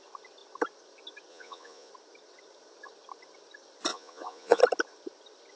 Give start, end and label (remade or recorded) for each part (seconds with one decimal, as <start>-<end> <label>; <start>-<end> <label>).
0.0-1.3 recorded; 1.3-1.9 remade; 1.9-3.9 recorded; 3.9-4.6 remade; 4.6-5.6 recorded